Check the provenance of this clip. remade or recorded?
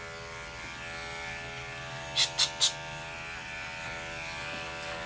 recorded